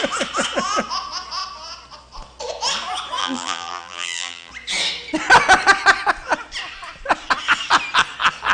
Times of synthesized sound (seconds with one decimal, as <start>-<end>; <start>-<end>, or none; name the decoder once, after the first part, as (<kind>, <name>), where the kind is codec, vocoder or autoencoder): 3.2-4.5 (vocoder, BigVGAN v2)